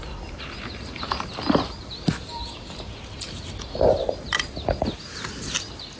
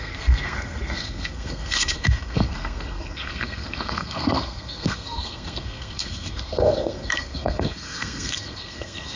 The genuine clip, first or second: first